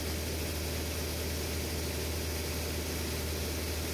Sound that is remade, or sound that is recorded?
recorded